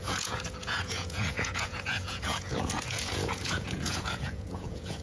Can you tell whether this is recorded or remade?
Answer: remade